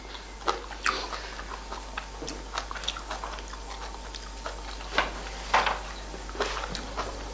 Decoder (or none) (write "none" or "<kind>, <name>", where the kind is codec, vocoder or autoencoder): none